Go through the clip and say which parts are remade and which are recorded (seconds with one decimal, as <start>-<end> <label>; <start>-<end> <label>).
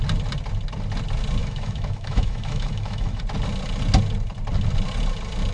0.0-1.4 recorded; 1.4-3.2 remade; 3.2-5.5 recorded